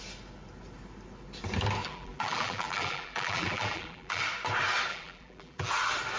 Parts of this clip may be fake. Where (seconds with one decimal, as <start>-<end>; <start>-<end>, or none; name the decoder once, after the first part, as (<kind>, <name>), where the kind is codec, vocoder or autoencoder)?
1.8-4.2 (vocoder, BigVGAN v2); 4.9-5.7